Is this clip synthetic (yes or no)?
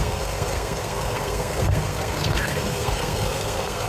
yes